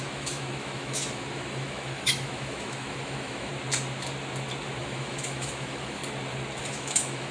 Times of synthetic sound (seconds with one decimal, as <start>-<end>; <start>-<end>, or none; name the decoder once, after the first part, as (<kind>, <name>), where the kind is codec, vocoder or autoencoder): 0.0-3.5 (autoencoder, DAC-VAE); 4.8-6.0; 6.7-7.3